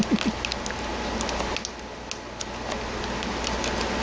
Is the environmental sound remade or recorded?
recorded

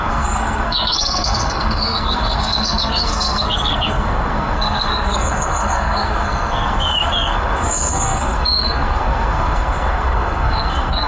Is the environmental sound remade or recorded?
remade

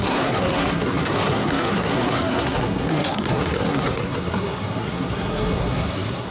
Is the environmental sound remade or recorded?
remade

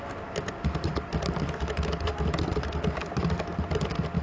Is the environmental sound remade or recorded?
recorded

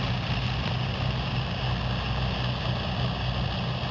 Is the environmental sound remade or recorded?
recorded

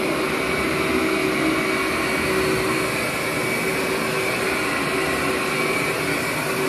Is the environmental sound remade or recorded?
recorded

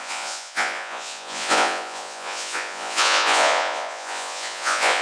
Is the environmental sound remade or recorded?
remade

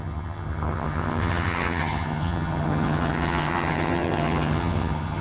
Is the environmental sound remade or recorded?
remade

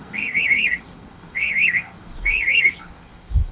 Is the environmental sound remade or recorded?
remade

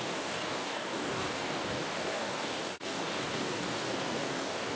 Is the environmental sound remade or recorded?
remade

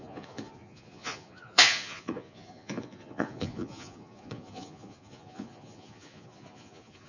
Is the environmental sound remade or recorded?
remade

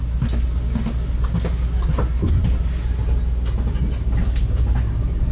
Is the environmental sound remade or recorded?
recorded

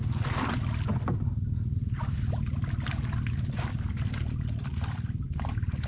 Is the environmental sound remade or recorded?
recorded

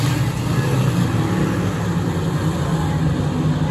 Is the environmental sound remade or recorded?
recorded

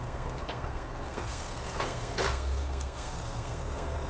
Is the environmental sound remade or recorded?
remade